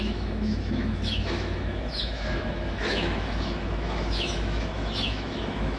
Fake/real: fake